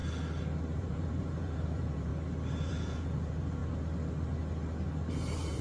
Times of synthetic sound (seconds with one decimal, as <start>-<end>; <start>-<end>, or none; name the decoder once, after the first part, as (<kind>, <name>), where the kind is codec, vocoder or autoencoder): 0.8-2.1 (vocoder, Vocos); 2.7-3.6; 5.1-5.6